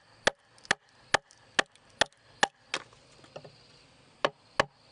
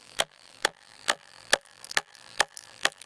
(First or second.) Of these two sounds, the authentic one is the first